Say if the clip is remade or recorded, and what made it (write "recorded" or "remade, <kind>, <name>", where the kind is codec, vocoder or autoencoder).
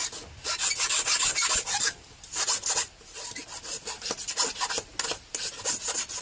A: recorded